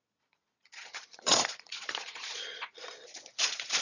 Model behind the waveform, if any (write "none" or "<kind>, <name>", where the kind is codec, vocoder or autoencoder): vocoder, Vocos